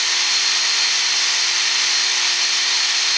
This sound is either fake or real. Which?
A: real